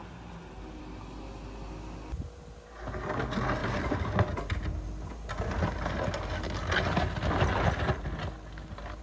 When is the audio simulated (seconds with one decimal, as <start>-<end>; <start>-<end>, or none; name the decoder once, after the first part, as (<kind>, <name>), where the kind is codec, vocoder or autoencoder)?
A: none